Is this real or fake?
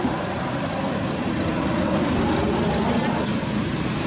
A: real